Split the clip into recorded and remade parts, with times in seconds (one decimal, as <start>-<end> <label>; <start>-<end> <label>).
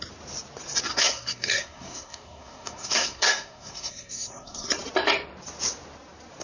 0.0-0.9 recorded; 0.9-4.7 remade; 4.7-6.4 recorded